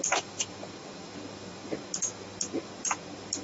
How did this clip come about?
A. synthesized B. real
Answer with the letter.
B